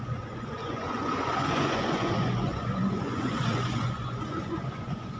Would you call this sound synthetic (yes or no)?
yes